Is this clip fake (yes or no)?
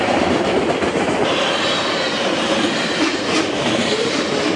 yes